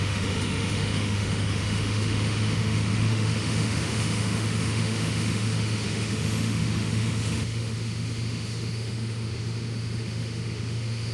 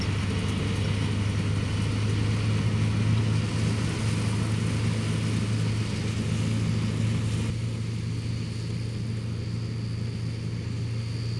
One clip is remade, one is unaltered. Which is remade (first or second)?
first